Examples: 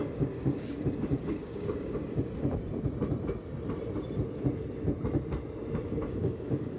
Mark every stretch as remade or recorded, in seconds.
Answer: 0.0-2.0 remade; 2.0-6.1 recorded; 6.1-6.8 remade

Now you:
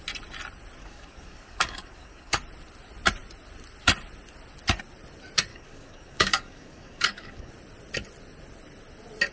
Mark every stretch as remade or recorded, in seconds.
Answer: 0.0-0.8 recorded; 0.8-2.4 remade; 2.4-5.5 recorded; 5.5-7.5 remade; 7.5-9.3 recorded